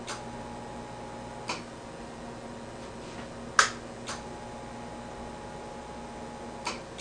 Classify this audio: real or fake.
real